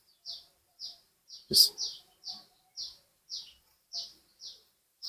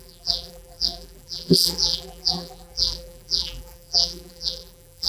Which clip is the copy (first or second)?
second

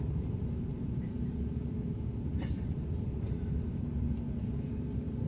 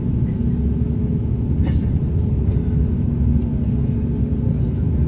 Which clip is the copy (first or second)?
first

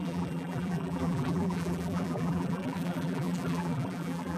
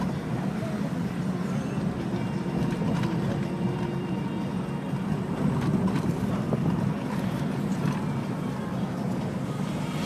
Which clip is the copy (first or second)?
first